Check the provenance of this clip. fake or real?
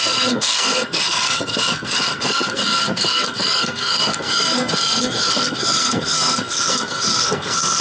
fake